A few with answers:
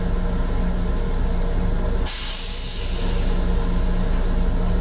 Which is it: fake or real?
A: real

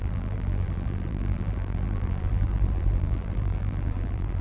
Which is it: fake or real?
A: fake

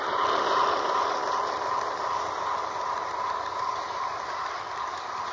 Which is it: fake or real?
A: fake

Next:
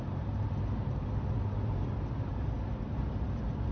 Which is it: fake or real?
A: fake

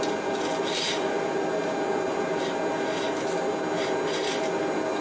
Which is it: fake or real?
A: real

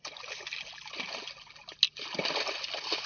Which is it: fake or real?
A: real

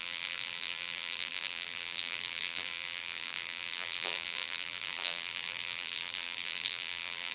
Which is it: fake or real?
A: fake